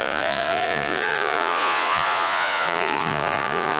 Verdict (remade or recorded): remade